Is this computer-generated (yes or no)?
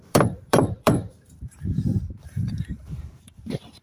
yes